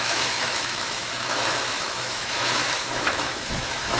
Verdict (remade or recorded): remade